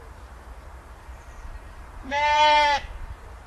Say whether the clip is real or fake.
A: fake